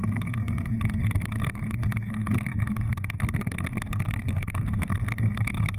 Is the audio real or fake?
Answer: fake